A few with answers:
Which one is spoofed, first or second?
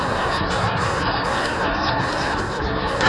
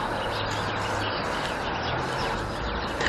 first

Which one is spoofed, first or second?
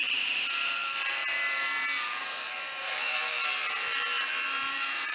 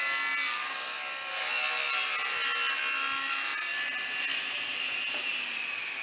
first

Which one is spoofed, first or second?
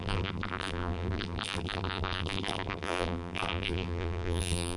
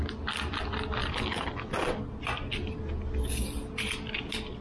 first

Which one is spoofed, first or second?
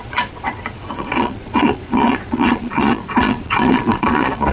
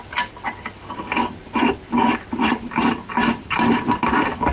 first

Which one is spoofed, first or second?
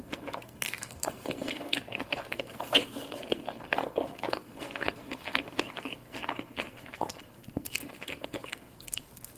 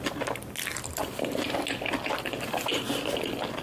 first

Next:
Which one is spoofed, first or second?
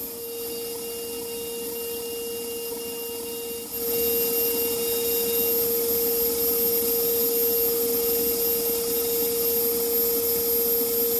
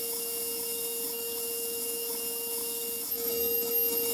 second